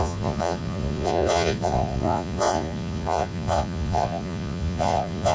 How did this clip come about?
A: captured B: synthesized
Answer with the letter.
B